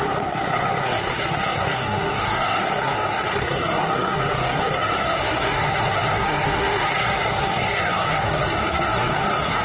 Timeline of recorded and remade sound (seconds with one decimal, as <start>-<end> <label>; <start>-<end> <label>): 0.0-9.6 remade